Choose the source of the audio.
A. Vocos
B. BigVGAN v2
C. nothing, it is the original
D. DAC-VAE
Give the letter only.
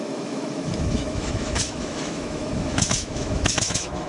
D